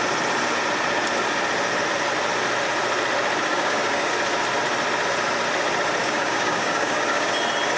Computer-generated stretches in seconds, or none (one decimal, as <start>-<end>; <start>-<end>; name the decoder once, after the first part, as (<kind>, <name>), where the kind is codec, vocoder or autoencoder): 3.5-4.1 (codec, DAC); 6.0-7.3